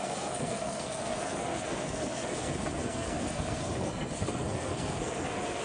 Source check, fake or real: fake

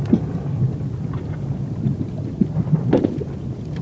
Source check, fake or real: real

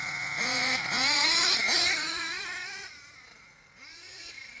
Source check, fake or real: fake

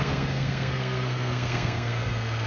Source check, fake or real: fake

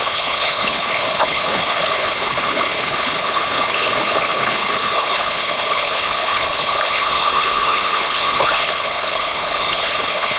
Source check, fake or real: fake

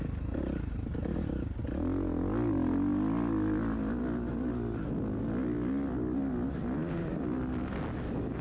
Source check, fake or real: real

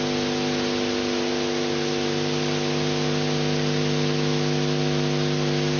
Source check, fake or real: real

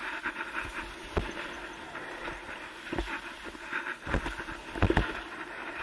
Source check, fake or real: real